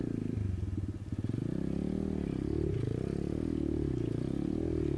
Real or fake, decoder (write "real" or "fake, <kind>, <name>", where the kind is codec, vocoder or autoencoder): real